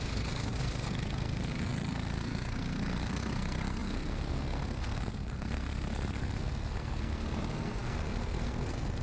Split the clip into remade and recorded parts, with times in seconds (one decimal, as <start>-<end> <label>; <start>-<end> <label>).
0.0-9.0 remade